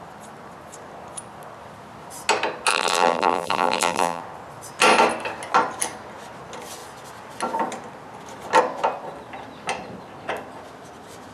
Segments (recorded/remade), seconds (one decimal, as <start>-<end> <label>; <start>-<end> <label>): 0.0-2.7 recorded; 2.7-4.2 remade; 4.2-11.3 recorded